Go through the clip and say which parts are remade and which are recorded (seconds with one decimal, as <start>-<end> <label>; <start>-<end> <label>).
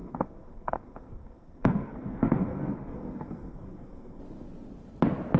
0.0-4.2 remade; 4.2-5.4 recorded